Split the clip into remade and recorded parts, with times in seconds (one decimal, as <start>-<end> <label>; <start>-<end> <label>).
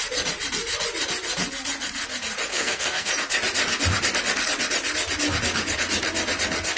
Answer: 0.0-2.5 recorded; 2.5-3.1 remade; 3.1-6.8 recorded